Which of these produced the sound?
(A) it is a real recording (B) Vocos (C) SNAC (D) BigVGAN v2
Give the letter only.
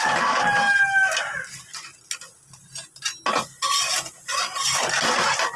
A